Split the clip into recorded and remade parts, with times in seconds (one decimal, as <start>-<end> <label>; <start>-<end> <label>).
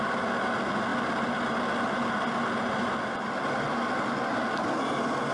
0.0-5.3 recorded